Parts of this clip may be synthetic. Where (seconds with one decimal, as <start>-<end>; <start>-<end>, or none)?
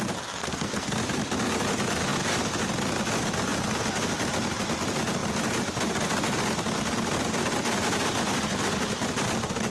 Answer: 0.4-1.0